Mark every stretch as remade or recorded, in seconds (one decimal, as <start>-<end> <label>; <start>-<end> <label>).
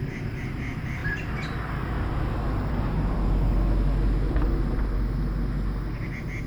0.0-6.5 recorded